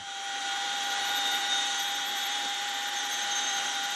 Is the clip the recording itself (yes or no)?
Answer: no